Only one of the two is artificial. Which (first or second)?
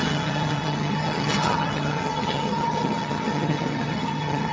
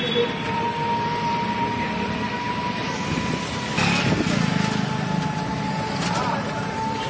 first